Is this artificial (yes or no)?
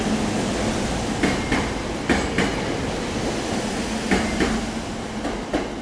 no